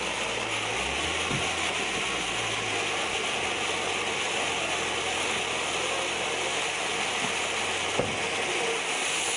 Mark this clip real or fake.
real